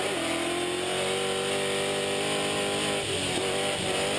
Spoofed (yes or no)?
no